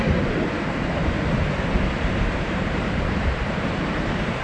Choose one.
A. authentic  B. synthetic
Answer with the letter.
B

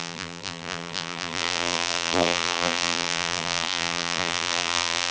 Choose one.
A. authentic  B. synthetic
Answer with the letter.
B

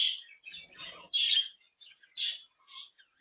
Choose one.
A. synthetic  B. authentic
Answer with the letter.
A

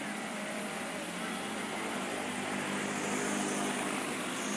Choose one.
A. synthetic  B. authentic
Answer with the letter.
B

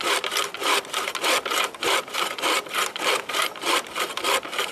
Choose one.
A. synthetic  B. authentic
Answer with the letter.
B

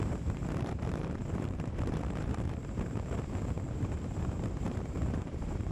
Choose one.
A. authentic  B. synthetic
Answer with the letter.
B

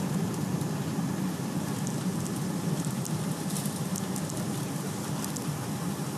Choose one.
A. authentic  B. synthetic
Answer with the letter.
A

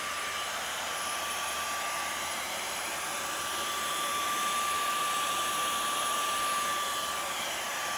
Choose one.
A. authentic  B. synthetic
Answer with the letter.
B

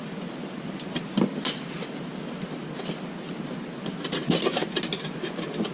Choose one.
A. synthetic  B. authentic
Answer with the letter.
B